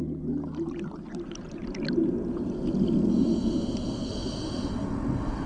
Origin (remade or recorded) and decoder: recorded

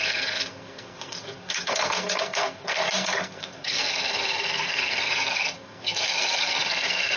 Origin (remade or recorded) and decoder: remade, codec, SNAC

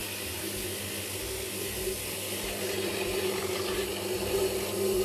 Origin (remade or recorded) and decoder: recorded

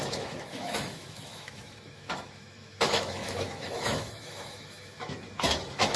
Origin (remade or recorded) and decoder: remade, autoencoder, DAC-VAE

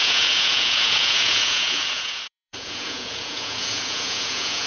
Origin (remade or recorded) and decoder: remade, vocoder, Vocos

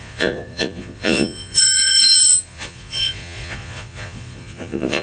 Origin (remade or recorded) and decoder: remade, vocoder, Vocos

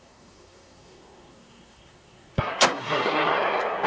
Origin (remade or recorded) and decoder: remade, codec, SNAC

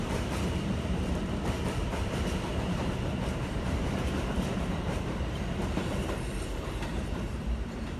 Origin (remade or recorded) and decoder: remade, vocoder, BigVGAN v2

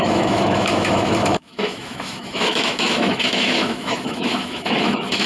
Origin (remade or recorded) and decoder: remade, autoencoder, DAC-VAE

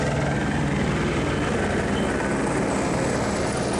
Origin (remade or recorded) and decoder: recorded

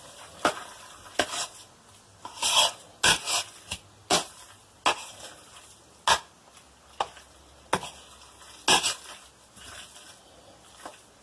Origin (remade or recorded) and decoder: recorded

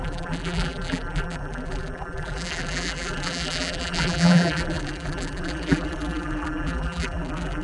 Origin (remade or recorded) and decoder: remade, vocoder, BigVGAN v2